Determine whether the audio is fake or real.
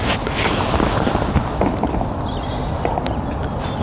real